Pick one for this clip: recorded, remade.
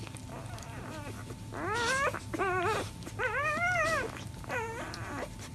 recorded